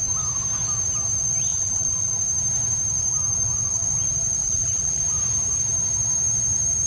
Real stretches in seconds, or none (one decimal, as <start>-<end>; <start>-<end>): 0.0-1.5; 2.1-4.4; 5.0-6.9